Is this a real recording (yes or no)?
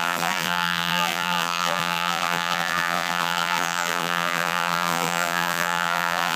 no